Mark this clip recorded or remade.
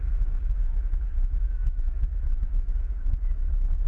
remade